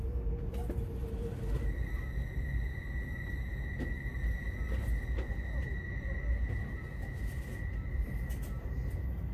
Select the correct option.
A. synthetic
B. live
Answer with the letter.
B